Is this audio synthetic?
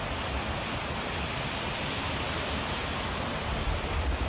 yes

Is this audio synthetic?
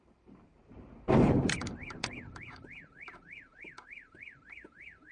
yes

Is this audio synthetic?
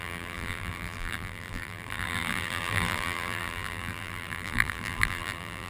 yes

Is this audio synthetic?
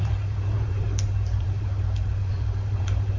yes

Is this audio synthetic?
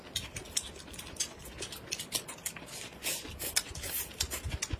no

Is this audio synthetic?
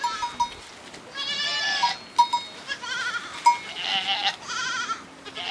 no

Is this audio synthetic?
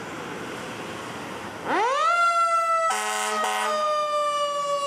no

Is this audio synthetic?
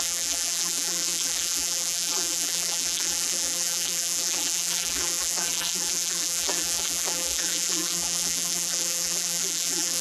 yes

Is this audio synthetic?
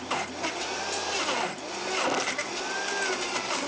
yes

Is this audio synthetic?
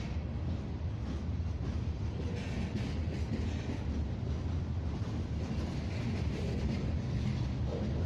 no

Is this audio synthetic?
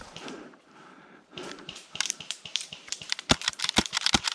yes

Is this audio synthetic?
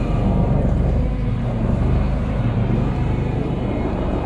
yes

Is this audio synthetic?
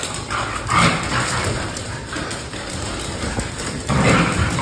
no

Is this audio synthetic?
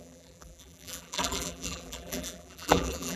yes